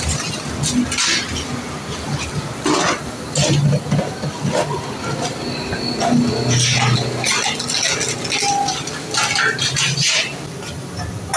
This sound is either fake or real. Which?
real